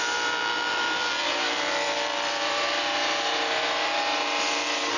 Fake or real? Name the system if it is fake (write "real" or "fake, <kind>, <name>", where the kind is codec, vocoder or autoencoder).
fake, vocoder, BigVGAN v2